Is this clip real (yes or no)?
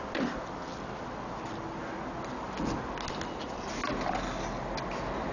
yes